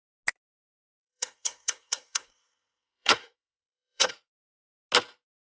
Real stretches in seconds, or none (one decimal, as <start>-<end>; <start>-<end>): 0.0-0.7; 4.1-5.6

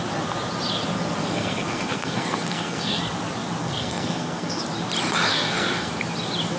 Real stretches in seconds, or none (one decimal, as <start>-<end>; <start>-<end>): 0.0-1.2; 3.0-3.6; 4.6-5.3; 5.9-6.6

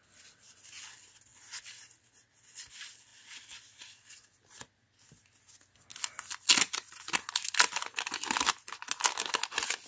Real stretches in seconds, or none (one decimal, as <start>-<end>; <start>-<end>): 0.0-9.9

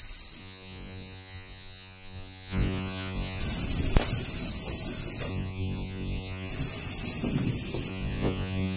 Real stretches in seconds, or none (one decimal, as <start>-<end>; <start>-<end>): 0.0-0.4; 3.4-5.3; 6.5-7.9

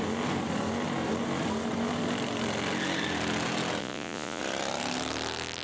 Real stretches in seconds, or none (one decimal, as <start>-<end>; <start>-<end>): 0.0-3.8; 4.4-5.6

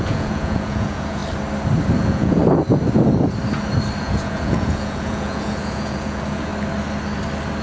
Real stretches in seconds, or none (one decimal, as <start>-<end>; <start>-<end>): 1.2-2.0; 2.4-4.0; 6.5-7.6